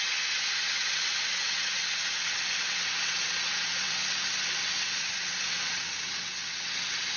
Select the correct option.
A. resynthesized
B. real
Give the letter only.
A